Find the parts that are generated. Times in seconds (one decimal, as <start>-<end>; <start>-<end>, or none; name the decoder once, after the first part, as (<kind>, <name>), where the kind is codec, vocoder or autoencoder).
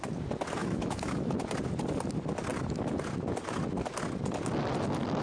0.6-1.3 (autoencoder, DAC-VAE)